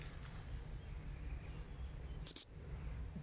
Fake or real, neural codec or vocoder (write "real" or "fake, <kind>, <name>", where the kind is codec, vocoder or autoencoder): real